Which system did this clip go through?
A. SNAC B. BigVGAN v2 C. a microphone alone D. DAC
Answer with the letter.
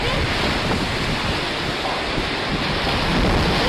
C